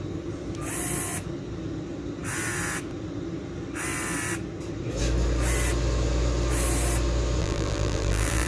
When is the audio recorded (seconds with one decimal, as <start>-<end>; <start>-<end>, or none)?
0.0-7.4